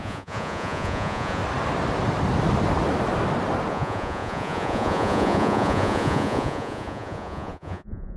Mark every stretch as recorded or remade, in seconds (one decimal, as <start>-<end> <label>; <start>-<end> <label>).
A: 0.0-1.4 remade; 1.4-3.7 recorded; 3.7-8.2 remade